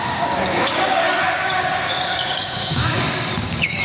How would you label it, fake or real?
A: fake